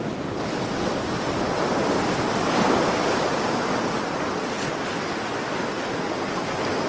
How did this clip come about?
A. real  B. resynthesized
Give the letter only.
A